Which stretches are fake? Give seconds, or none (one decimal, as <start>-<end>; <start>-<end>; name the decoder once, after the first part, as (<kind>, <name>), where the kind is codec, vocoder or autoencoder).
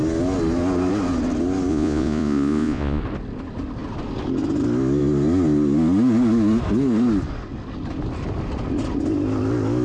1.7-3.0 (vocoder, Vocos)